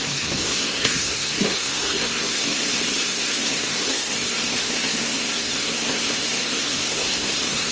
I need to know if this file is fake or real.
fake